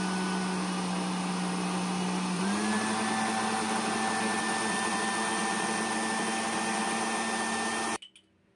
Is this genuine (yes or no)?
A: yes